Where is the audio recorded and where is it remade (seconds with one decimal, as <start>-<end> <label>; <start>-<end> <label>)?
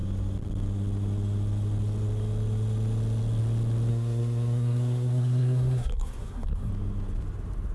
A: 0.0-3.9 recorded; 3.9-6.7 remade; 6.7-7.7 recorded